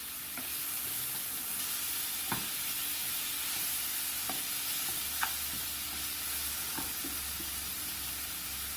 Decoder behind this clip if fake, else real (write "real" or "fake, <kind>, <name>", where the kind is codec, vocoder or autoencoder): real